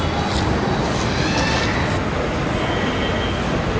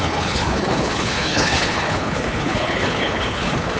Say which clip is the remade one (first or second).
second